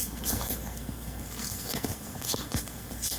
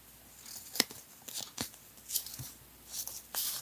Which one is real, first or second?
second